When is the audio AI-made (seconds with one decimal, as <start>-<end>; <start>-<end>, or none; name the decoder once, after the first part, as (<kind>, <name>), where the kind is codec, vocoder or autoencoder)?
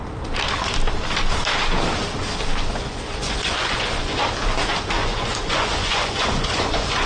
2.7-4.2 (vocoder, Vocos); 5.0-7.1